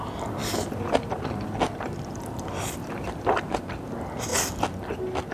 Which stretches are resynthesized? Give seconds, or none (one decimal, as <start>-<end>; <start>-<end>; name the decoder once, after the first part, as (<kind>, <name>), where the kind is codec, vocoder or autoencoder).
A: 0.4-3.6 (vocoder, BigVGAN v2)

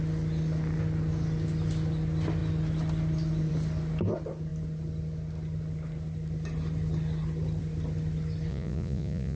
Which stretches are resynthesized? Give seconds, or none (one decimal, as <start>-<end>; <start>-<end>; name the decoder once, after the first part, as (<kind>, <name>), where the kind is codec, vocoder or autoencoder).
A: 8.5-9.4 (vocoder, Vocos)

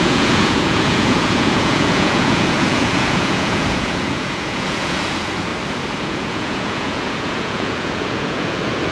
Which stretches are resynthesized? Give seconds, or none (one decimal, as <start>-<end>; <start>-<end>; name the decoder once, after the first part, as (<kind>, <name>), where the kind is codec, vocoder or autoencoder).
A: 0.0-5.5 (vocoder, Vocos); 6.0-8.9